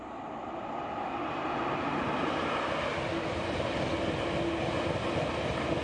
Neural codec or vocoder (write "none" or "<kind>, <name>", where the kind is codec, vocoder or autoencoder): none